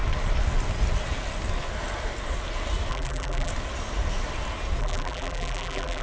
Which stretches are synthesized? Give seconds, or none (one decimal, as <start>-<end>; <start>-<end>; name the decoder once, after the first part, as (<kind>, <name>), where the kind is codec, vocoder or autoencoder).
2.9-3.5 (vocoder, BigVGAN v2); 4.8-6.0